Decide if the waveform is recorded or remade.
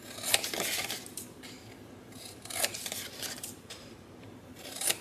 remade